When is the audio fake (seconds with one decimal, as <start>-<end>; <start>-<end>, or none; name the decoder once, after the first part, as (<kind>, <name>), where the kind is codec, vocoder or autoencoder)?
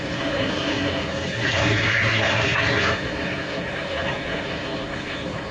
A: 0.0-5.5 (codec, SNAC)